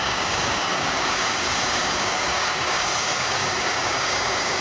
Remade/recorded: remade